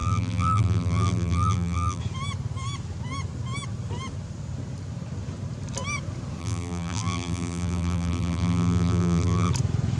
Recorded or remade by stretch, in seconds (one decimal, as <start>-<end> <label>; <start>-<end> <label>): 0.0-2.0 remade; 2.0-6.4 recorded; 6.4-9.5 remade; 9.5-10.0 recorded